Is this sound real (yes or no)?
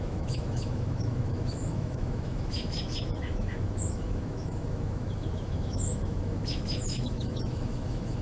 no